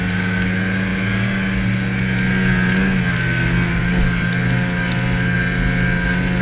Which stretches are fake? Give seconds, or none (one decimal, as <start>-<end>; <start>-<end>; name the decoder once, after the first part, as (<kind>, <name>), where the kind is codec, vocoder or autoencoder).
none